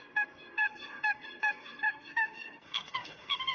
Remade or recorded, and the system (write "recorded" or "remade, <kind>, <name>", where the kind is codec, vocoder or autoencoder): remade, codec, SNAC